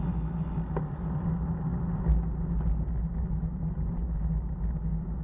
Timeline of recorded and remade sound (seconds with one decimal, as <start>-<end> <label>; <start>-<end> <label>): 0.0-5.2 recorded